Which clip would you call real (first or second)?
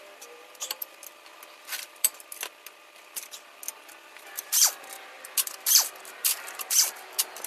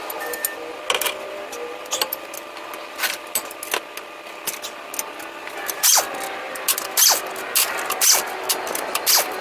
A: second